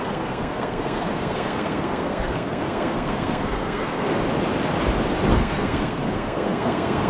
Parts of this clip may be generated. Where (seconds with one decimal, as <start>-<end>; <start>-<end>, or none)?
0.0-4.2; 5.3-7.1